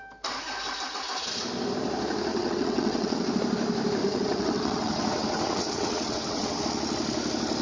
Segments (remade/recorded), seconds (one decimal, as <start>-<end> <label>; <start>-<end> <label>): 0.0-2.3 recorded; 2.3-3.3 remade; 3.3-4.0 recorded; 4.0-6.6 remade; 6.6-7.6 recorded